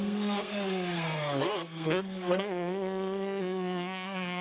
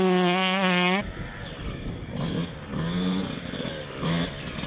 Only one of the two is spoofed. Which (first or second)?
first